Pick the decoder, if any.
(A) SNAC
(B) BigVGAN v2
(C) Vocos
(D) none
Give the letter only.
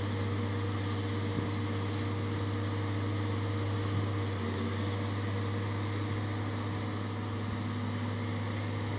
D